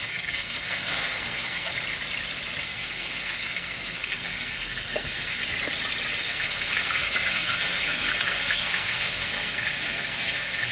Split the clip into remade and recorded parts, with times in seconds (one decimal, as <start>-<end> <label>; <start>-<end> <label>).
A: 0.0-1.7 remade; 1.7-2.6 recorded; 2.6-5.4 remade; 5.4-6.2 recorded; 6.2-10.7 remade